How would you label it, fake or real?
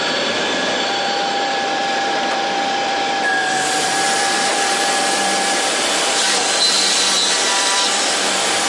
fake